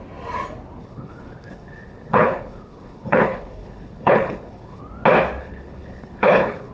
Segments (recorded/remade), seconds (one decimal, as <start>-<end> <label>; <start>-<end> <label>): 0.0-0.8 recorded; 0.8-4.8 remade; 4.8-5.4 recorded; 5.4-6.7 remade